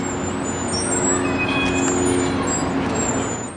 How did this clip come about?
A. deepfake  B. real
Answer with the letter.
B